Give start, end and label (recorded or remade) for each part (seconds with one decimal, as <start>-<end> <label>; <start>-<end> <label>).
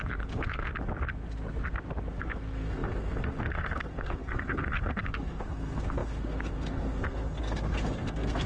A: 0.0-0.7 remade; 0.7-2.1 recorded; 2.1-8.5 remade